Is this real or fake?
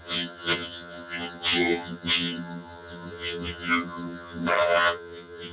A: fake